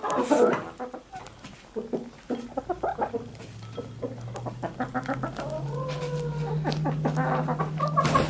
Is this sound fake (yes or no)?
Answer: no